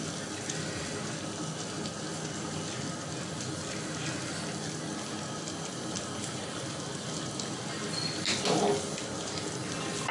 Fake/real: real